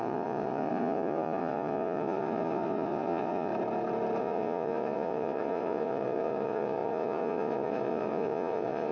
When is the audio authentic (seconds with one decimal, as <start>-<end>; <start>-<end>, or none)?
3.5-4.2